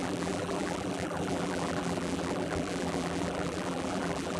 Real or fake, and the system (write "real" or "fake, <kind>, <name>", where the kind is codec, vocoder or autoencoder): fake, vocoder, BigVGAN v2